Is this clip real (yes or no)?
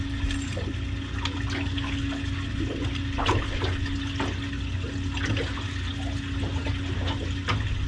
yes